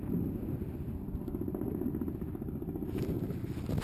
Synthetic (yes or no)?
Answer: no